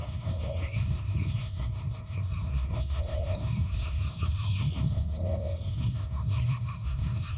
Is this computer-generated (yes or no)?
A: yes